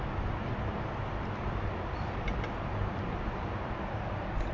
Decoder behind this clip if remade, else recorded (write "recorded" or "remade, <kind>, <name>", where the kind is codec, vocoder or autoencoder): recorded